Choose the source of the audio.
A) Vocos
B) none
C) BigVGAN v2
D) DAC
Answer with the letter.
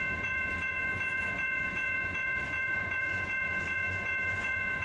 A